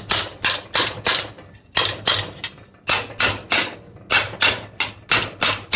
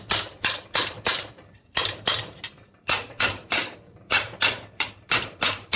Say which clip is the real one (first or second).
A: first